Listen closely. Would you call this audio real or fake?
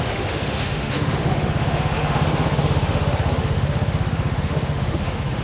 fake